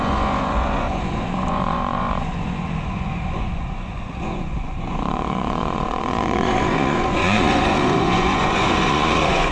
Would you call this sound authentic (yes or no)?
no